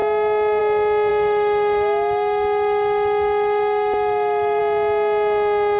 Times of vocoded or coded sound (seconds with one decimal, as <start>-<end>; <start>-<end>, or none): 1.1-4.6